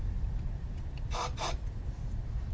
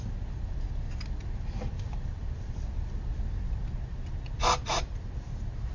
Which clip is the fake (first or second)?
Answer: first